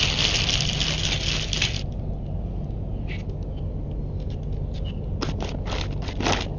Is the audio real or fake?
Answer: real